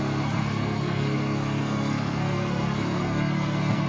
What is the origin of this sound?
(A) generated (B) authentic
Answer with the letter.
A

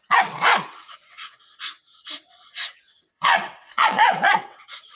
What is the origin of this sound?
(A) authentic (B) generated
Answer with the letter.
B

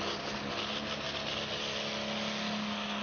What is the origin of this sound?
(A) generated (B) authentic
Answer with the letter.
B